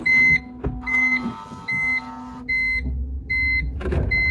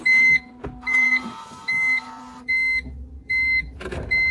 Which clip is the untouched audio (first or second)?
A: first